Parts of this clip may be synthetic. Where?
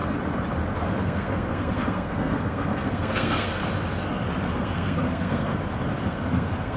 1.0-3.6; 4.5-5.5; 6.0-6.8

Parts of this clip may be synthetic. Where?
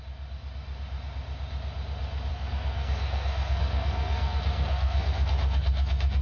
2.3-6.2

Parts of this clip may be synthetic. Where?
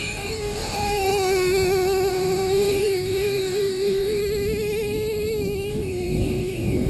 0.0-1.1; 2.1-4.2; 5.7-6.9